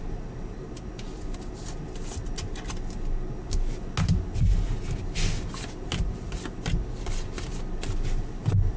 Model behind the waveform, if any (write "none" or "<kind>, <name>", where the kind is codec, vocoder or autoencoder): none